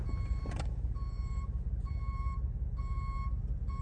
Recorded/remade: remade